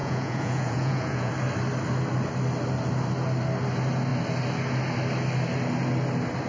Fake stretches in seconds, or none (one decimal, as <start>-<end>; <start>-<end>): 0.0-1.3